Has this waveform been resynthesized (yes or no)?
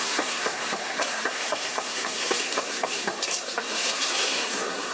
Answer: yes